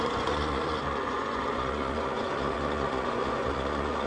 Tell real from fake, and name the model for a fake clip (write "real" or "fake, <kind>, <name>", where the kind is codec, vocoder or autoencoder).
fake, vocoder, Vocos